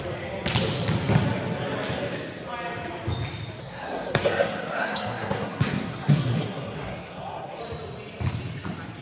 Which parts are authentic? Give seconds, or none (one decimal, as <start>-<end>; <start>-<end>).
0.0-3.6; 7.6-9.0